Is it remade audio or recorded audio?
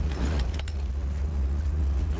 remade